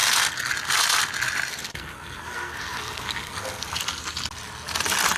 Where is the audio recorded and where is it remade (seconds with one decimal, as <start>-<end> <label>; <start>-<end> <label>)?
0.0-0.5 remade; 0.5-1.5 recorded; 1.5-3.8 remade; 3.8-5.2 recorded